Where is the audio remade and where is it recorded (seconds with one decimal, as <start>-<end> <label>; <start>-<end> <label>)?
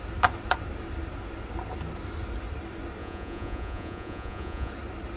0.0-3.0 recorded; 3.0-4.7 remade; 4.7-5.2 recorded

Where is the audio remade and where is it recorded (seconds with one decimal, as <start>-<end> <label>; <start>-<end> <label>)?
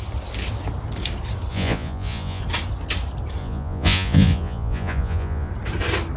0.0-1.5 recorded; 1.5-2.4 remade; 2.4-3.4 recorded; 3.4-5.5 remade; 5.5-6.2 recorded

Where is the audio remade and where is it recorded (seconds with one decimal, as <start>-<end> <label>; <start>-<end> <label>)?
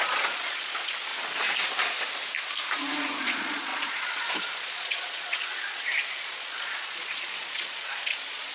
0.0-1.1 remade; 1.1-2.8 recorded; 2.8-8.5 remade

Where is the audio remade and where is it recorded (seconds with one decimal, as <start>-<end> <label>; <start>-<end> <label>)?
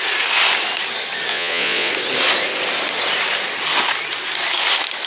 0.0-1.3 recorded; 1.3-1.9 remade; 1.9-5.1 recorded